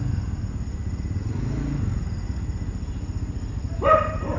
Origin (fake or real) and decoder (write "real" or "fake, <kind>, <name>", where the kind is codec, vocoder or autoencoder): real